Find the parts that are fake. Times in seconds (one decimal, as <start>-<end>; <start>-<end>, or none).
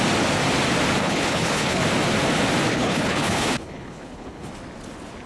1.0-1.8; 2.7-4.5